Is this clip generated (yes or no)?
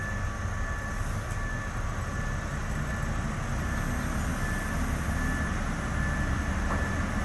no